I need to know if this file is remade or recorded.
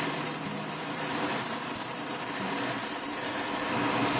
remade